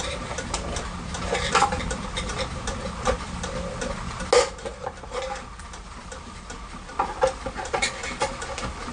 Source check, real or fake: real